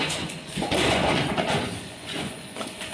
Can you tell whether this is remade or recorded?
remade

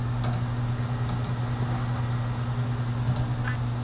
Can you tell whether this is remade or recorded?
recorded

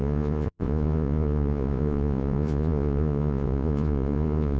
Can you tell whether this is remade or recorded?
remade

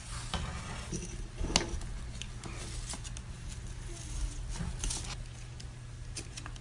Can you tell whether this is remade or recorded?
recorded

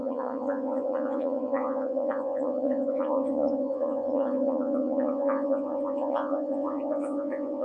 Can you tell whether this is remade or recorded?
remade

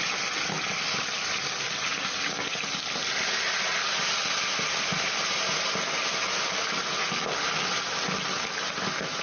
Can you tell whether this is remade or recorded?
recorded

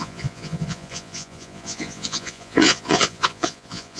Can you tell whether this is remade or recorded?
remade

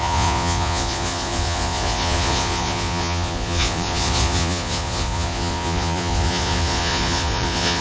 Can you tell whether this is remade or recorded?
remade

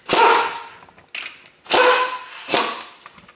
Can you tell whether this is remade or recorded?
recorded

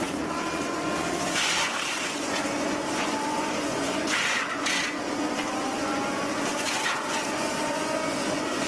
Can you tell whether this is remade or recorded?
remade